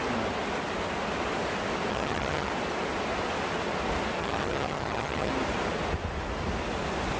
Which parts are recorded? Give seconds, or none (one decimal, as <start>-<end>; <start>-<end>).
0.0-1.9; 2.5-4.2; 5.3-7.2